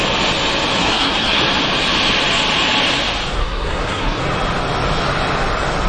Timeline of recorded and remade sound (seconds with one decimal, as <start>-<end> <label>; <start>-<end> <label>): 0.0-0.8 recorded; 0.8-1.4 remade; 1.4-3.4 recorded; 3.4-4.2 remade; 4.2-5.9 recorded